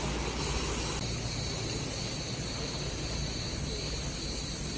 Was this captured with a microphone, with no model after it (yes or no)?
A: yes